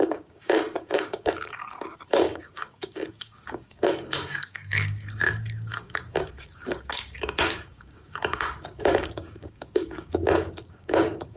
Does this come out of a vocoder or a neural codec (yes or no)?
yes